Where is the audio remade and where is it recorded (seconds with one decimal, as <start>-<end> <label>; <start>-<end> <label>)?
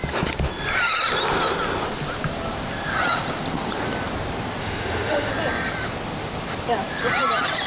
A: 0.0-4.6 recorded; 4.6-5.3 remade; 5.3-7.7 recorded